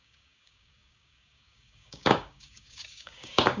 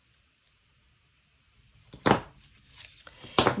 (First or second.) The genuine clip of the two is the second